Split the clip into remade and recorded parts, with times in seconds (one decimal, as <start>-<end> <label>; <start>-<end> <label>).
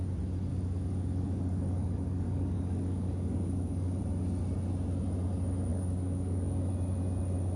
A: 0.0-0.5 recorded; 0.5-4.0 remade; 4.0-5.7 recorded; 5.7-6.7 remade; 6.7-7.6 recorded